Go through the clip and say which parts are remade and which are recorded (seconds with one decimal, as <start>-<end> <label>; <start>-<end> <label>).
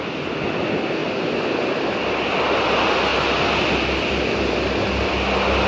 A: 0.0-1.0 recorded; 1.0-2.4 remade; 2.4-5.7 recorded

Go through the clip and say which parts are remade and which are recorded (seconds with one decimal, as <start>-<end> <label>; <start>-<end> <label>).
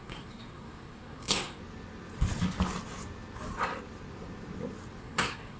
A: 0.0-1.6 remade; 1.6-5.0 recorded; 5.0-5.6 remade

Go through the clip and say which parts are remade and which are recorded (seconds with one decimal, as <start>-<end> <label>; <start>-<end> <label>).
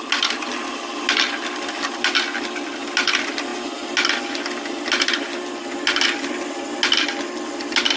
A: 0.0-8.0 recorded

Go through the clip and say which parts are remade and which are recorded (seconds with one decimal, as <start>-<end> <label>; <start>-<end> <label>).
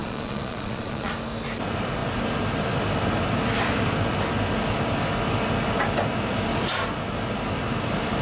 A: 0.0-1.1 remade; 1.1-8.2 recorded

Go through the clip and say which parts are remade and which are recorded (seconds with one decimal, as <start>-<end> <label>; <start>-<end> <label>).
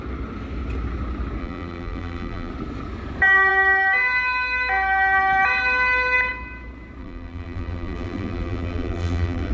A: 0.0-1.4 recorded; 1.4-2.5 remade; 2.5-7.0 recorded; 7.0-9.5 remade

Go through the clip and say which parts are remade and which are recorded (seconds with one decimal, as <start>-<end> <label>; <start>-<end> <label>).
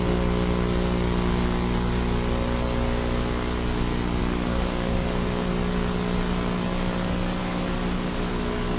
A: 0.0-4.2 recorded; 4.2-5.5 remade; 5.5-7.4 recorded; 7.4-8.8 remade